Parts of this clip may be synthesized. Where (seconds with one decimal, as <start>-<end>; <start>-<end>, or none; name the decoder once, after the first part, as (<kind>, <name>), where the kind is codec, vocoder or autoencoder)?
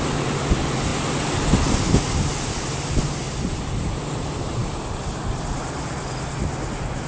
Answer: none